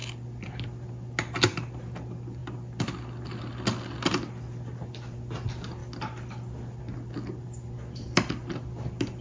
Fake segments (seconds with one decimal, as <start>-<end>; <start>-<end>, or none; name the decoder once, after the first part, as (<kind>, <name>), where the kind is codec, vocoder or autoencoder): none